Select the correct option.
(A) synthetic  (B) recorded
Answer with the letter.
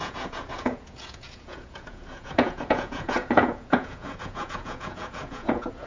A